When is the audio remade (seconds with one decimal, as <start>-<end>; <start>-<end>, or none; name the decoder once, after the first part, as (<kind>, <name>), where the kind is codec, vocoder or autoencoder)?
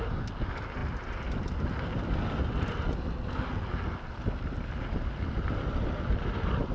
none